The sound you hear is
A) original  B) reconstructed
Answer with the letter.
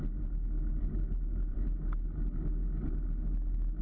A